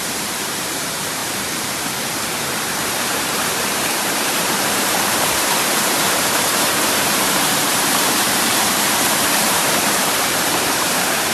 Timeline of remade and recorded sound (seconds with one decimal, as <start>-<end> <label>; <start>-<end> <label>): 0.0-1.2 remade; 1.2-2.5 recorded; 2.5-11.3 remade